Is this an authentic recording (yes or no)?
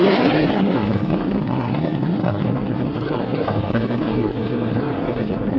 no